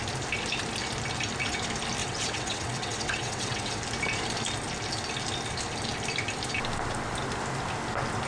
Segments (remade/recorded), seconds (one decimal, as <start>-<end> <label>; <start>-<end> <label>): 0.0-2.0 recorded; 2.0-3.8 remade; 3.8-8.3 recorded